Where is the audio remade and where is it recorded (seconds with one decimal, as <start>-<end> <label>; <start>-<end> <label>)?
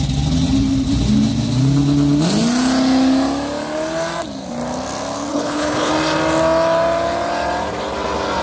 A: 0.0-5.3 recorded; 5.3-5.9 remade; 5.9-8.4 recorded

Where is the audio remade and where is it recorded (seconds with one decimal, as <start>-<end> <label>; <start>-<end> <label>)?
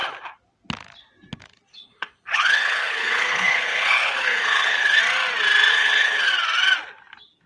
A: 0.0-1.7 recorded; 1.7-5.0 remade; 5.0-5.7 recorded; 5.7-6.3 remade; 6.3-7.5 recorded